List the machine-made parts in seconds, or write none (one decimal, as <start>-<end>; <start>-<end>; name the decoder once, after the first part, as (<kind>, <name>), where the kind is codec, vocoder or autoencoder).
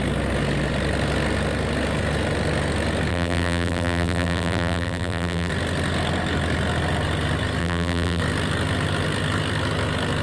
3.1-5.5 (vocoder, BigVGAN v2); 7.6-8.2